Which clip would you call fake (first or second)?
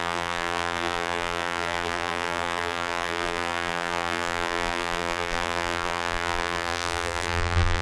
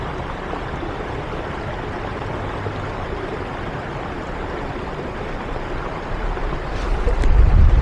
first